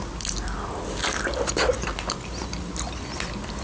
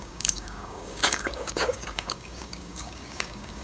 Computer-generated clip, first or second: second